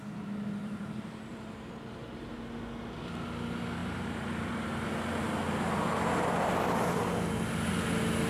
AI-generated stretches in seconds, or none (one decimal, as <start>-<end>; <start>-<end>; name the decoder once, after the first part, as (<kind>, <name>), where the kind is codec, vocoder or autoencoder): 0.6-2.4 (vocoder, BigVGAN v2); 3.8-4.5